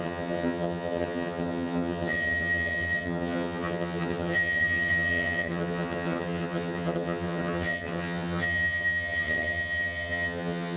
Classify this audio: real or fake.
fake